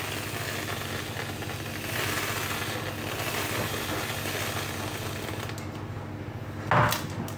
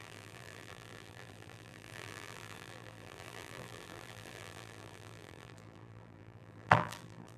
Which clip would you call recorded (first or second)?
first